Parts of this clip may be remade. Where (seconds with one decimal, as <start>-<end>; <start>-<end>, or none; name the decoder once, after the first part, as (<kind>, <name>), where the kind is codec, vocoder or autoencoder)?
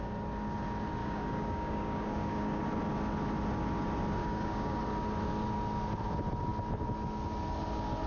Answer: 1.0-2.6 (codec, DAC); 4.2-4.8